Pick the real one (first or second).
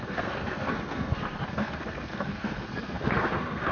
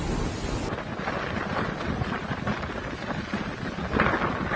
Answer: second